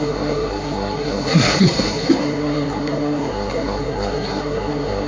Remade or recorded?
remade